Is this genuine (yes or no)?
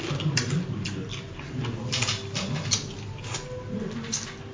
yes